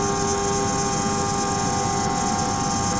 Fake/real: real